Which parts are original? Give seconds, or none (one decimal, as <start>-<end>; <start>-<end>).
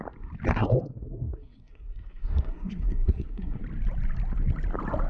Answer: 0.0-0.5; 3.6-5.1